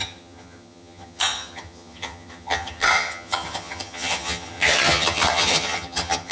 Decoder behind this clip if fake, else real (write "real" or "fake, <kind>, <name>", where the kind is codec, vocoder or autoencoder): fake, vocoder, HiFi-GAN